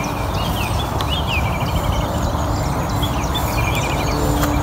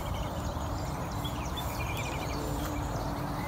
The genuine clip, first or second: first